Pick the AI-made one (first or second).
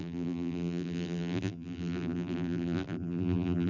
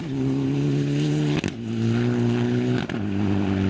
first